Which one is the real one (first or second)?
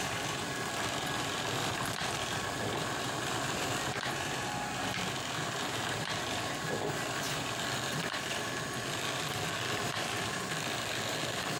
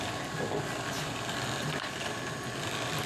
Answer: second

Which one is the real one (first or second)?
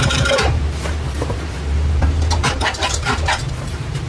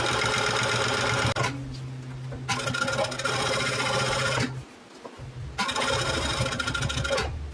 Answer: second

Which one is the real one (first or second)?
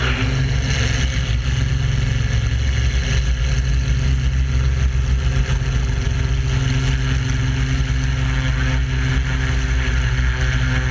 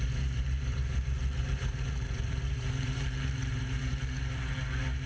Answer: first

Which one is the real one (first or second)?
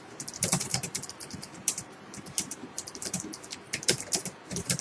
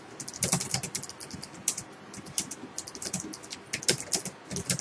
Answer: second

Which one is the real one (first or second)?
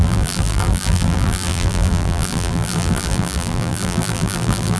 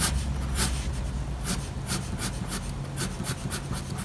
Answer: second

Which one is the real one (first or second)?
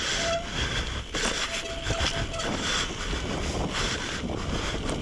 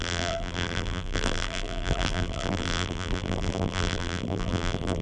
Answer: first